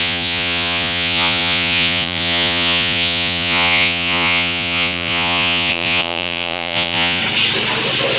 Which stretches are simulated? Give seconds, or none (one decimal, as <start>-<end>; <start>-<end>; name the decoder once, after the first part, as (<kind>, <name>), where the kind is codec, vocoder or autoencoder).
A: 0.0-7.2 (vocoder, Vocos)